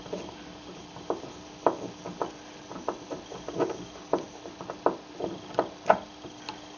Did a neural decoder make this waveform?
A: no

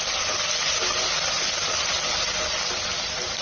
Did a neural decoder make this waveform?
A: no